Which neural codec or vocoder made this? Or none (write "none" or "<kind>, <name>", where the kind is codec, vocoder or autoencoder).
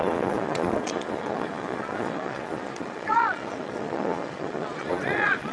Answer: vocoder, Vocos